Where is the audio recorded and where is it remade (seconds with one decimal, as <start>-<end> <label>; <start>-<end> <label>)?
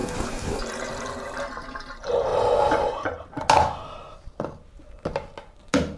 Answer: 0.0-0.6 remade; 0.6-6.0 recorded